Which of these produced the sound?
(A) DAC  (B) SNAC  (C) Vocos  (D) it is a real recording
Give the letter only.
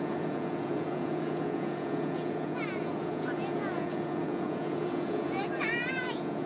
C